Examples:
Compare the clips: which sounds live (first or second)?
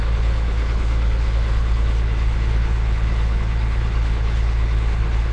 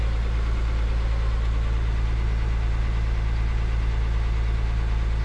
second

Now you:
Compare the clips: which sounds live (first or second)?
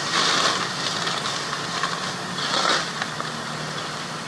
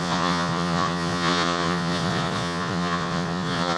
first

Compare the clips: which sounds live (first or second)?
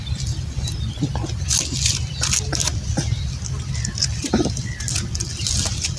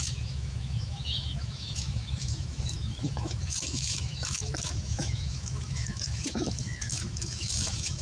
first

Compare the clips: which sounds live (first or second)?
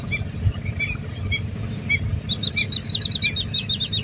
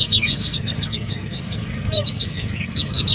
first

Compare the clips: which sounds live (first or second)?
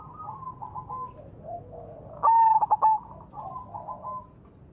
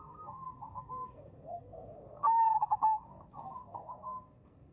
first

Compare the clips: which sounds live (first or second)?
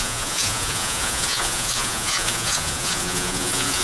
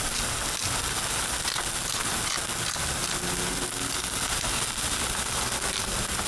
second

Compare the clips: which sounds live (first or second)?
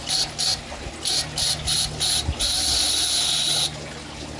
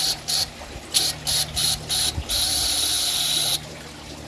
first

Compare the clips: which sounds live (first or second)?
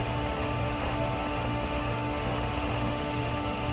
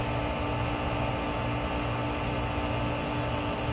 second